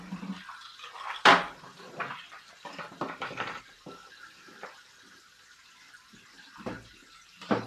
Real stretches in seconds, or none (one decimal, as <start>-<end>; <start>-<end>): 0.0-0.7; 5.2-7.7